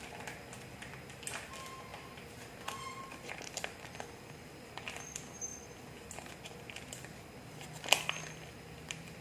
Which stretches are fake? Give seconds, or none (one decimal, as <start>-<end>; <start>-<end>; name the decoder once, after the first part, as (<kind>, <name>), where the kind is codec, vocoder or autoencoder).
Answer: none